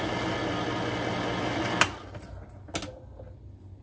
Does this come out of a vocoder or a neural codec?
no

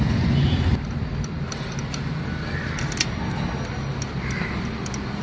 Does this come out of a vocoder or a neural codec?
no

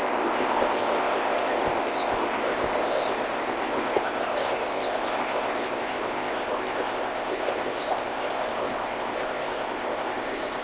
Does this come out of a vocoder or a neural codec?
yes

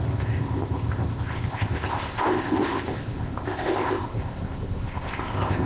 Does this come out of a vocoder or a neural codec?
yes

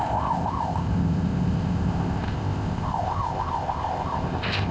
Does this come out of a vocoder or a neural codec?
yes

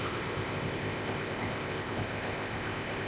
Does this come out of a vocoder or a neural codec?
yes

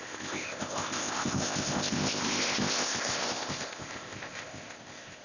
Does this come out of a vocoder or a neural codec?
yes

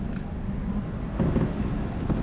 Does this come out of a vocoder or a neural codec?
no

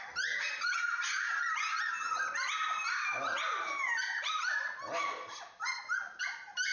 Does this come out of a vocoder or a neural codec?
no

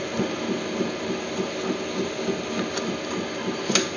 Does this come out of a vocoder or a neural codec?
no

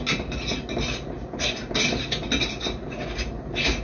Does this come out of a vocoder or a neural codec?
no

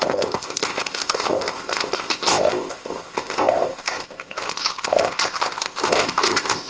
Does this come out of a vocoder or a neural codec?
yes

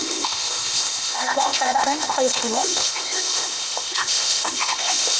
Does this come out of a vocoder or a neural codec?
yes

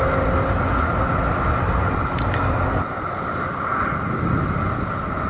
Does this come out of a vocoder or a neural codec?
no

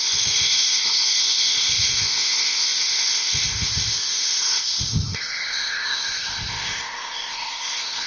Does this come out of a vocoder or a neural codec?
yes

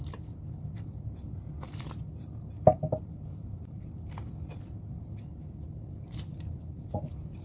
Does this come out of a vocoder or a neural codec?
no